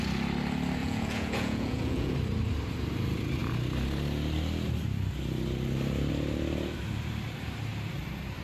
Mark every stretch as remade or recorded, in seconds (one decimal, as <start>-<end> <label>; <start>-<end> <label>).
0.0-0.8 recorded; 0.8-2.1 remade; 2.1-8.4 recorded